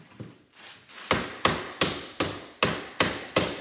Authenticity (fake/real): real